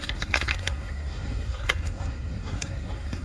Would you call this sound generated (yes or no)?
yes